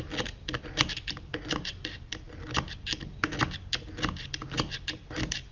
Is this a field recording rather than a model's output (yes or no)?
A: yes